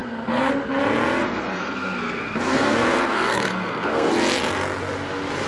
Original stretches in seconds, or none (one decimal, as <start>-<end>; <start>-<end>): 0.5-1.2; 4.1-5.5